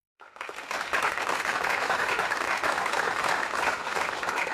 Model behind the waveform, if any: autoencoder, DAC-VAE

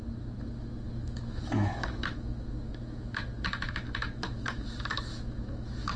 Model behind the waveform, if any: autoencoder, DAC-VAE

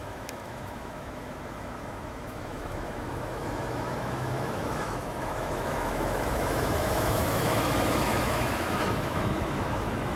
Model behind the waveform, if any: autoencoder, DAC-VAE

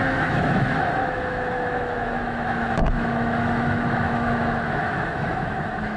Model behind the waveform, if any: autoencoder, DAC-VAE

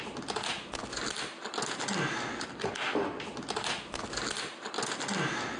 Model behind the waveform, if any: none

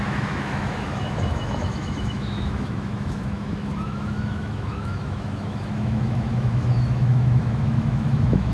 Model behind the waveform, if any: autoencoder, DAC-VAE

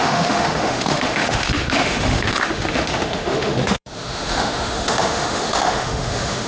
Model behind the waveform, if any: autoencoder, DAC-VAE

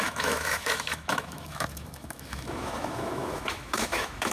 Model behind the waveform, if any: autoencoder, DAC-VAE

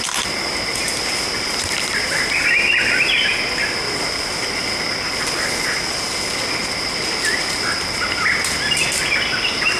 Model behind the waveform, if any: none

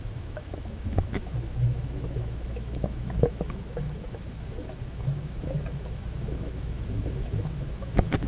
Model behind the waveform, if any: autoencoder, DAC-VAE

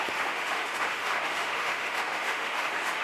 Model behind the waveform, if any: autoencoder, DAC-VAE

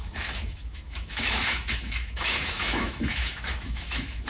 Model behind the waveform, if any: autoencoder, DAC-VAE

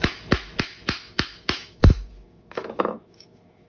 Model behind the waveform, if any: autoencoder, DAC-VAE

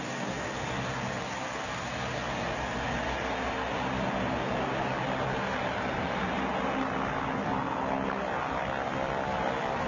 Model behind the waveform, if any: none